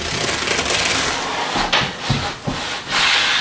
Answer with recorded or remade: recorded